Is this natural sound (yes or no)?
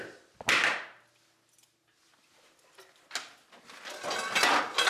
yes